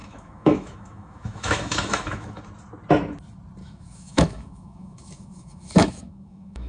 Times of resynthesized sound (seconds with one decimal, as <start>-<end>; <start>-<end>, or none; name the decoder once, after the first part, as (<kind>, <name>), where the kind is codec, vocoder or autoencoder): 0.0-2.4 (autoencoder, DAC-VAE); 3.6-6.7